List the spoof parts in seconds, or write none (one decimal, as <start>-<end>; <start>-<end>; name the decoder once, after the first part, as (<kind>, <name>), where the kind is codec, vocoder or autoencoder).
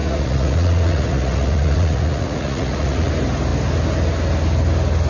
0.0-3.1 (vocoder, Vocos)